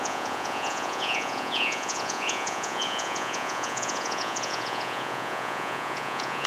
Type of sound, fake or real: fake